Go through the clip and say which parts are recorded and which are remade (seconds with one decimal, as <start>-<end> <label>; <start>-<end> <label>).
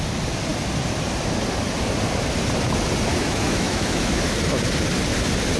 0.0-3.1 recorded; 3.1-4.2 remade; 4.2-5.6 recorded